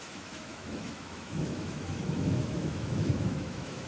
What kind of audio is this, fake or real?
fake